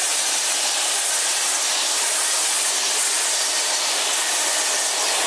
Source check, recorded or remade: recorded